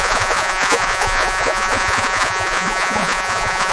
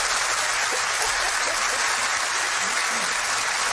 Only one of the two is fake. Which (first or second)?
first